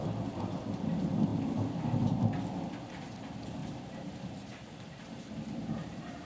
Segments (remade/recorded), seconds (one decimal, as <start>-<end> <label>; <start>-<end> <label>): 0.0-3.6 recorded; 3.6-6.3 remade